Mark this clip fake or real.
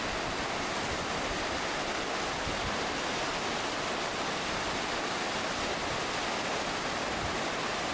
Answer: real